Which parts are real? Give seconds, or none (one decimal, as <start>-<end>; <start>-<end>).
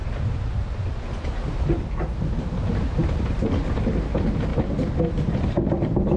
0.0-6.2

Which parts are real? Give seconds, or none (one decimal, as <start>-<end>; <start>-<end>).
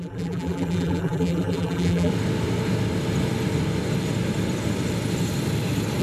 2.1-6.0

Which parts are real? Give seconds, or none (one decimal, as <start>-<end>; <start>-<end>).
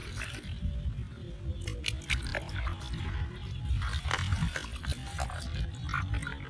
0.6-6.5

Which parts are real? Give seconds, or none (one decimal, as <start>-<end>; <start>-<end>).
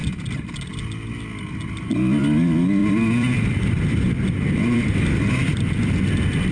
0.0-2.8; 5.8-6.5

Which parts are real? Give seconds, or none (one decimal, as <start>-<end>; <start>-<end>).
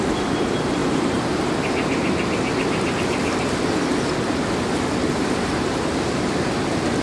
0.0-0.8; 2.9-5.2; 5.8-7.0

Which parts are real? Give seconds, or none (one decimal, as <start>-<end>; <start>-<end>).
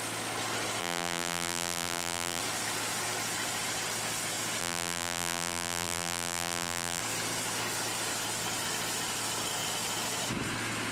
0.0-0.8; 2.4-4.6; 7.0-10.9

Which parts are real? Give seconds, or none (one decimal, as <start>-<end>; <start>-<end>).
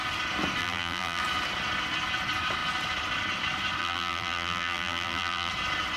0.0-0.6; 1.2-3.8; 5.5-6.0